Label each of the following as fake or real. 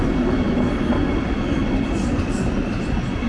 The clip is real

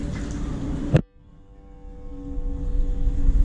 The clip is real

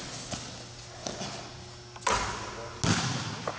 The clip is real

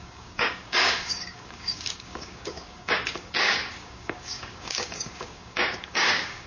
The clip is fake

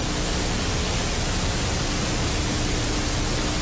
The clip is real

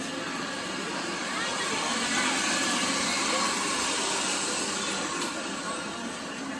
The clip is real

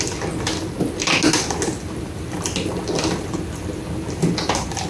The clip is real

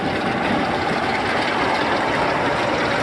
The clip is real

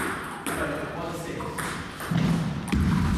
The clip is fake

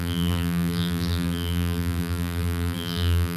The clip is fake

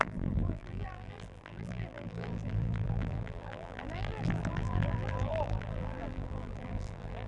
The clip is fake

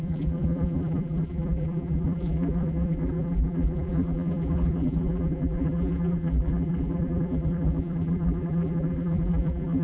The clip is fake